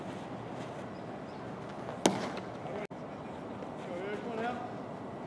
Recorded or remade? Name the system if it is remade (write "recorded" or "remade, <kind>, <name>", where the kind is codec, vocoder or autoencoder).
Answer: recorded